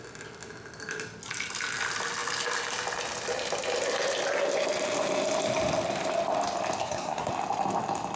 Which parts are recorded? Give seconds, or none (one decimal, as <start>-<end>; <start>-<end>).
0.0-6.8; 7.3-8.2